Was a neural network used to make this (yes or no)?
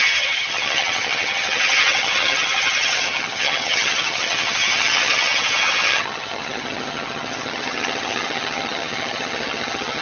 yes